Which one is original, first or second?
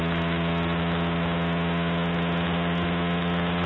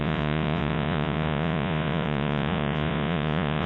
first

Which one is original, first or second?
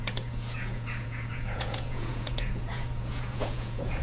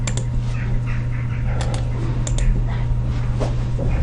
second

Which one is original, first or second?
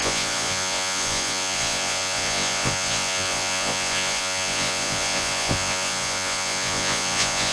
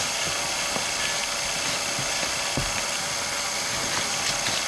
second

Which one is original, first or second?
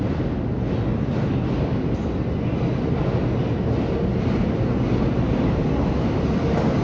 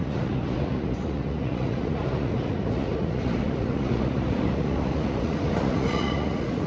first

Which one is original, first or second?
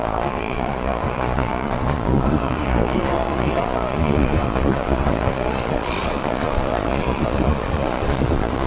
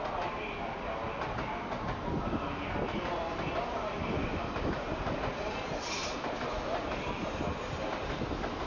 second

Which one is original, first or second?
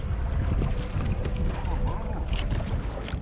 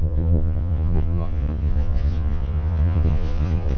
first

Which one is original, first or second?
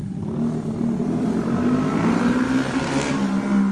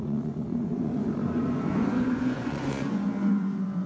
first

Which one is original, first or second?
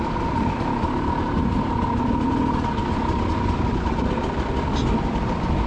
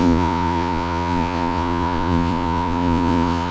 first